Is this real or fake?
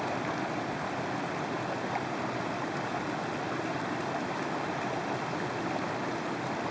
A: real